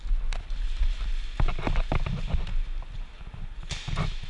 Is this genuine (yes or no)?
yes